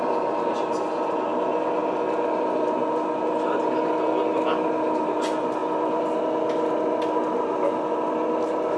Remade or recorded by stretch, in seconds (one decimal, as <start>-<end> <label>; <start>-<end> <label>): 0.0-8.8 recorded